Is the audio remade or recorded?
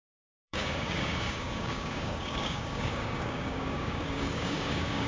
remade